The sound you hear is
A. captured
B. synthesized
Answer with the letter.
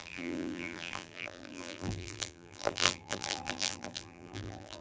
B